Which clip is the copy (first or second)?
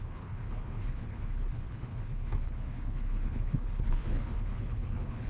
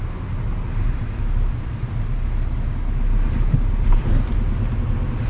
first